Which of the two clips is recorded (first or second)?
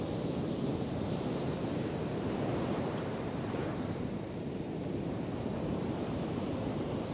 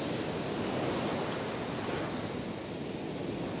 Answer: second